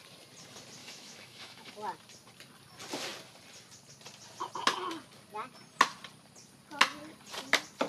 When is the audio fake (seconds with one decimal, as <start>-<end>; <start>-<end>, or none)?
0.8-1.7